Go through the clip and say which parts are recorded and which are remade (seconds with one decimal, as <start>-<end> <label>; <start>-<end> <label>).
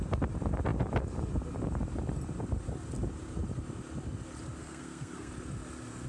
0.0-4.6 recorded; 4.6-5.3 remade; 5.3-6.1 recorded